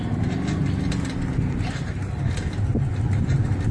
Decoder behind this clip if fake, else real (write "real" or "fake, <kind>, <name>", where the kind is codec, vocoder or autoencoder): real